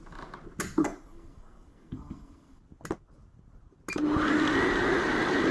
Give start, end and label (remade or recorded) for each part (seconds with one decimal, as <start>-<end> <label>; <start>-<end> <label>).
0.0-0.8 recorded; 0.8-2.6 remade; 2.6-5.5 recorded